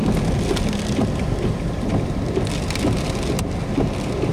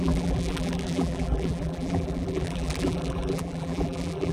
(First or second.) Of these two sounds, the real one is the first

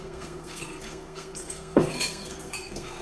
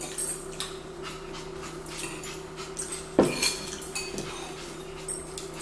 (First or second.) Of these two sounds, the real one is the second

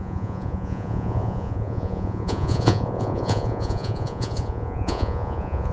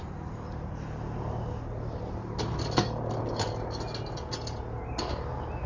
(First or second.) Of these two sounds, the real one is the second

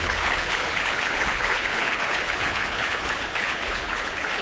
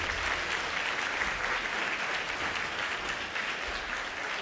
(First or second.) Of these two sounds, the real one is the second